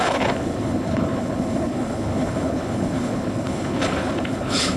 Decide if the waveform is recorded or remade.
remade